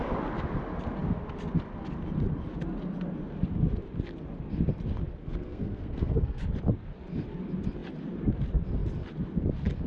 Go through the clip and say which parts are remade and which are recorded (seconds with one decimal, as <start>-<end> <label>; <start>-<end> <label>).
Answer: 0.0-5.2 recorded; 5.2-6.4 remade; 6.4-9.9 recorded